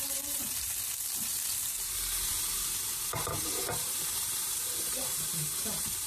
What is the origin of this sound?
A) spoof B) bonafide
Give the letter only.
A